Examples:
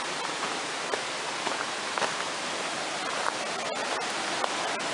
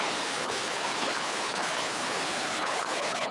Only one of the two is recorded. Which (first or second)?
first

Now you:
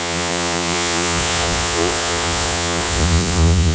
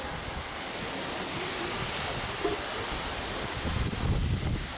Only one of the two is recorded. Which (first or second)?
second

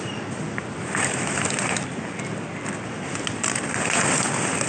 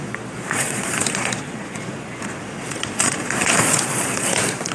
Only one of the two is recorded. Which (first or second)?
first